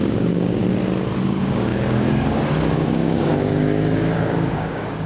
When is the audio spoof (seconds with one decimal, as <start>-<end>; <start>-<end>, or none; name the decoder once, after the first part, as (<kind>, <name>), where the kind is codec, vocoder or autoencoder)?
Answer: 0.0-0.6 (codec, DAC); 1.2-5.1